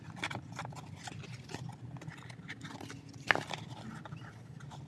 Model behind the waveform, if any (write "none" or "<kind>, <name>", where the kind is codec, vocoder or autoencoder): none